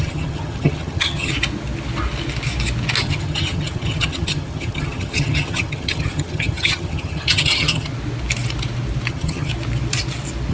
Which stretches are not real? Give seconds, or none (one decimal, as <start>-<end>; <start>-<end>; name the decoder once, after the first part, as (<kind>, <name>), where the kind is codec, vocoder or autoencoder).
0.0-1.3 (vocoder, HiFi-GAN); 3.0-7.9; 9.1-9.5